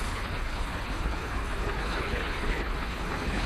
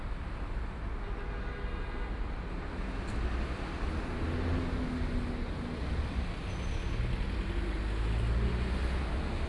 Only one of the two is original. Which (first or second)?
second